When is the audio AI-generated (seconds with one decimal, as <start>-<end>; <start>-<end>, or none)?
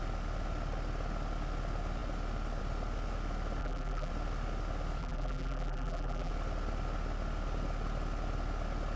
3.6-4.1; 5.0-6.3